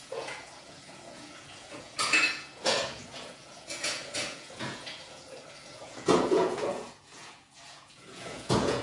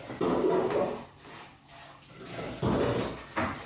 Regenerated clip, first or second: first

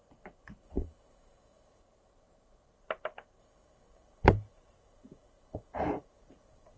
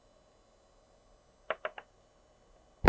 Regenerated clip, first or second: first